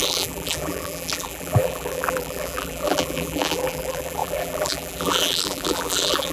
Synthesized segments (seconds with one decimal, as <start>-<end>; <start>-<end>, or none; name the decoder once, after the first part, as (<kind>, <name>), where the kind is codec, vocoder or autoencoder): 0.0-6.3 (vocoder, BigVGAN v2)